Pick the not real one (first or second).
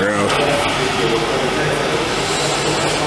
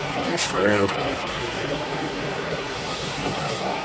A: second